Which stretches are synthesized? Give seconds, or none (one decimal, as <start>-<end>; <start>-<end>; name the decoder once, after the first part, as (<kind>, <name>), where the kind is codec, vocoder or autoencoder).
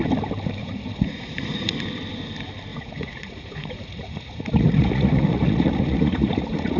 0.6-1.8 (vocoder, Vocos); 2.7-6.8